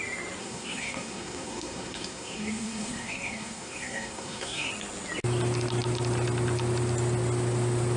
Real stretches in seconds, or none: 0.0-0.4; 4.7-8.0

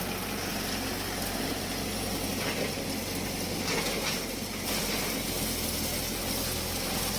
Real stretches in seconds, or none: 0.0-7.2

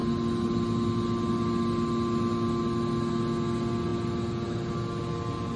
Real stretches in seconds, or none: 0.0-5.6

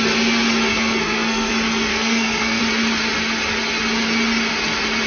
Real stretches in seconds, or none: 0.0-0.7; 1.5-1.9; 2.6-5.1

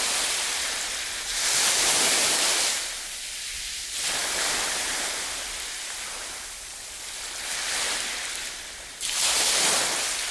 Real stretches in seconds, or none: 0.0-1.3; 2.8-10.3

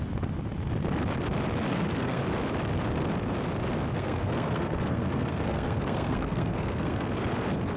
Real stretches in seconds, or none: 0.0-1.7; 2.2-3.9; 7.1-7.8